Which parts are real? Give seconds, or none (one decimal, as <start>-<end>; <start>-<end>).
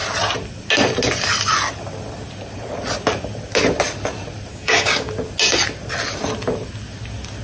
0.0-4.5; 5.1-7.4